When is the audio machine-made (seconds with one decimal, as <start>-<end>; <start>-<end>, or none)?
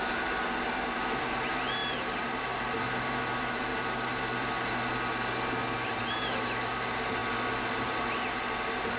1.8-2.4; 3.7-4.7